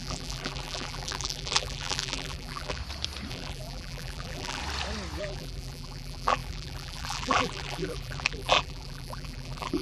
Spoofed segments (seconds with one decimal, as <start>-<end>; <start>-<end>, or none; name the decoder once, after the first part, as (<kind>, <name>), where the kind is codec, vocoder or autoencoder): 0.0-2.8 (vocoder, BigVGAN v2); 3.3-4.6; 5.2-9.8